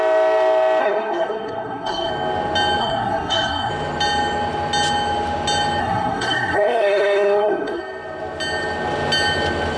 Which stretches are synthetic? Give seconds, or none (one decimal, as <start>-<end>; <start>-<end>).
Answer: 0.8-2.1; 2.8-3.7; 5.8-7.8